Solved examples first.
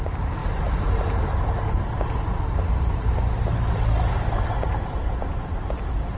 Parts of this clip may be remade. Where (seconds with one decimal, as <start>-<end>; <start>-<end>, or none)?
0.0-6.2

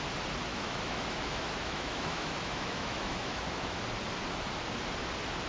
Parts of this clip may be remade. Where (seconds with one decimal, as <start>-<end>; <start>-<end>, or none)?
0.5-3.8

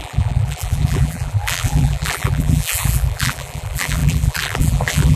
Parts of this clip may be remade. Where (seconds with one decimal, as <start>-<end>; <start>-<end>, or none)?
0.0-5.2

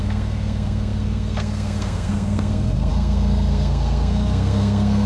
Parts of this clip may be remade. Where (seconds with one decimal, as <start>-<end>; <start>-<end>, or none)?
0.0-5.1

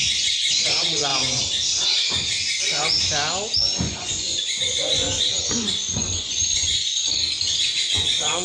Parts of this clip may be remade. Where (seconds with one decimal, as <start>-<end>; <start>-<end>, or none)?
0.0-1.1; 3.6-7.0; 7.6-8.4